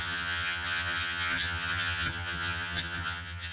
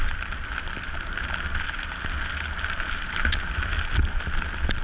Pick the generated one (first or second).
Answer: first